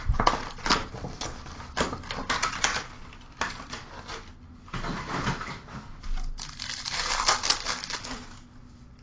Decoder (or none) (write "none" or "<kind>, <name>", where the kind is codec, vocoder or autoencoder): none